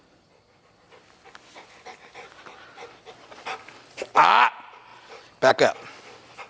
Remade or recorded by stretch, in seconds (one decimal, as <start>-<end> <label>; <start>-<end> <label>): 0.0-6.5 recorded